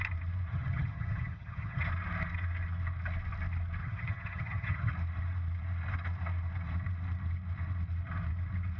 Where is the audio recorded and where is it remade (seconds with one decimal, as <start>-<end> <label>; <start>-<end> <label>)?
0.0-0.5 recorded; 0.5-1.9 remade; 1.9-3.8 recorded; 3.8-4.9 remade; 4.9-8.8 recorded